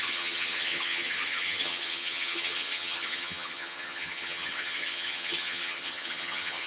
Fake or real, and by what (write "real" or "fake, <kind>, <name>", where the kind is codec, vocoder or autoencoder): fake, vocoder, HiFi-GAN